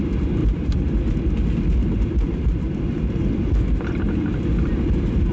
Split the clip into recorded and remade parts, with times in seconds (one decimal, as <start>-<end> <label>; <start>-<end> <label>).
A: 0.0-0.4 recorded; 0.4-1.1 remade; 1.1-1.8 recorded; 1.8-2.7 remade; 2.7-5.3 recorded